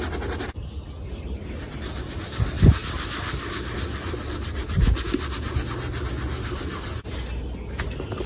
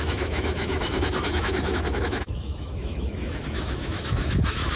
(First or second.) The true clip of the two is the first